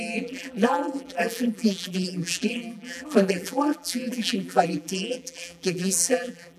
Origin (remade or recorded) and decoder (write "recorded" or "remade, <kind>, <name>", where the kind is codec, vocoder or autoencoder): remade, vocoder, BigVGAN v2